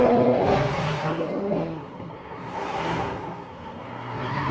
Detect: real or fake fake